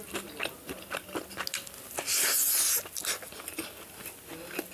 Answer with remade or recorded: recorded